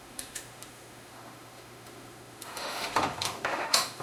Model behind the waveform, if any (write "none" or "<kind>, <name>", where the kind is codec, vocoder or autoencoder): autoencoder, DAC-VAE